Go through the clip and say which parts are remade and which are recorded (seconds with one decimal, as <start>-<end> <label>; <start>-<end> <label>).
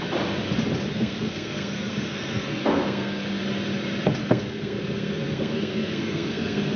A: 0.0-0.9 recorded; 0.9-3.4 remade; 3.4-4.2 recorded; 4.2-6.8 remade